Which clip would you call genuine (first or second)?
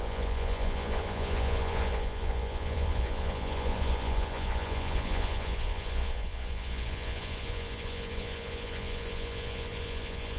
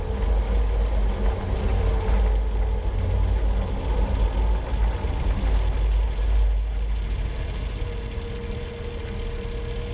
second